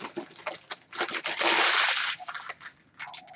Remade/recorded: recorded